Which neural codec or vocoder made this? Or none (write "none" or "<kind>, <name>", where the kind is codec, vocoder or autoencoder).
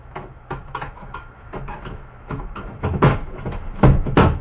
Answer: autoencoder, DAC-VAE